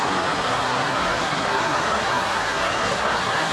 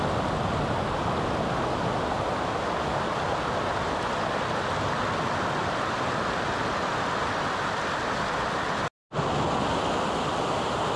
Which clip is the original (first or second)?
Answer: second